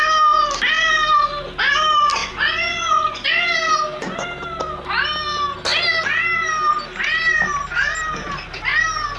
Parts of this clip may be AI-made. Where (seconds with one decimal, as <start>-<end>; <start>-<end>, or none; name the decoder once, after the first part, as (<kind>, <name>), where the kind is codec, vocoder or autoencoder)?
2.2-3.3 (vocoder, Vocos)